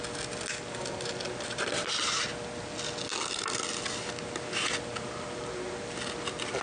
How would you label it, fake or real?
real